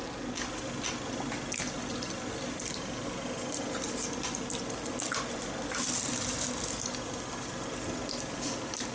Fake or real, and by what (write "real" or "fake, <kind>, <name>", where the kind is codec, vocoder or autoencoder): real